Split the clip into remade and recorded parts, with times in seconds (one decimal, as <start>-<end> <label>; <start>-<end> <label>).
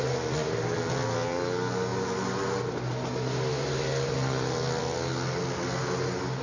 0.0-6.4 recorded